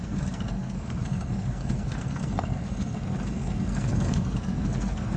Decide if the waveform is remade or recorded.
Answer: remade